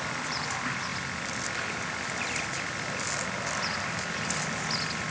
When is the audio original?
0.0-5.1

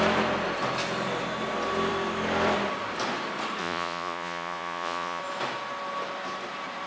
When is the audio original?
0.0-3.6; 5.2-6.9

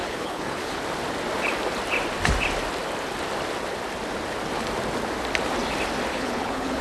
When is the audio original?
0.8-6.1

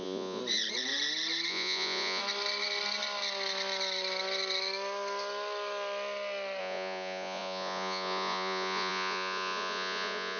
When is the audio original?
0.4-1.5; 2.2-6.6

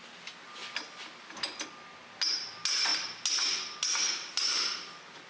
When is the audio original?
0.0-5.3

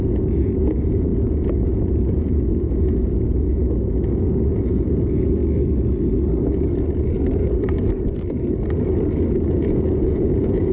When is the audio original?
5.4-9.5

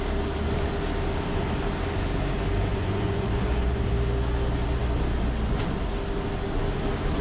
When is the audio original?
0.0-2.7; 3.9-7.2